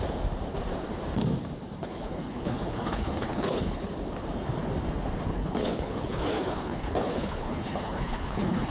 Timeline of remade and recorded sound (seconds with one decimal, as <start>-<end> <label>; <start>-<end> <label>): 0.0-1.8 recorded; 1.8-3.9 remade; 3.9-5.3 recorded; 5.3-8.7 remade